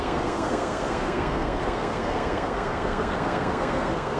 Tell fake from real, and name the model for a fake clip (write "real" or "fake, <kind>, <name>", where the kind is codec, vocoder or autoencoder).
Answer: fake, codec, SNAC